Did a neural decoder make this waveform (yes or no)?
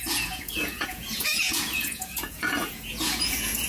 yes